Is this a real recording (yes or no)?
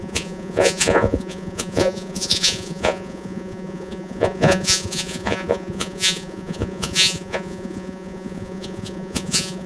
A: no